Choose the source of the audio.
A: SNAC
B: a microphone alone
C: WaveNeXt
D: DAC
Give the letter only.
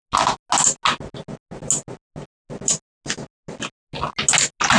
B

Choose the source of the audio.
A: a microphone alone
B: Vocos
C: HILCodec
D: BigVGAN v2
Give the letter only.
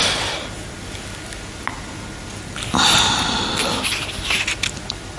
A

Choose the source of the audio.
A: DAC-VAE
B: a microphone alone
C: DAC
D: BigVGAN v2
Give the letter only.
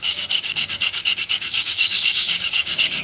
C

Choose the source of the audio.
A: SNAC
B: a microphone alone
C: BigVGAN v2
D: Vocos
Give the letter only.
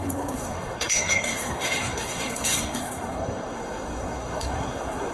A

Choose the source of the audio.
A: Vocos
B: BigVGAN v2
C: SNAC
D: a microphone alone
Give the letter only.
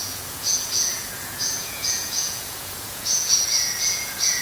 A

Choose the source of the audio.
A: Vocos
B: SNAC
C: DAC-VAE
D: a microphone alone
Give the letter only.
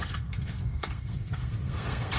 B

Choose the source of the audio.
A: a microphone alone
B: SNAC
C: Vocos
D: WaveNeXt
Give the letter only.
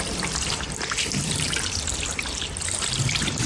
A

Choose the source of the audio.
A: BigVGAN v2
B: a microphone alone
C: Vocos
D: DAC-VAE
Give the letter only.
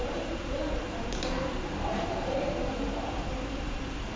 A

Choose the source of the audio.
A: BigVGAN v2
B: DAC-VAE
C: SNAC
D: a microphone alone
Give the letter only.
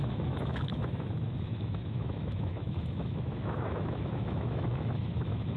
B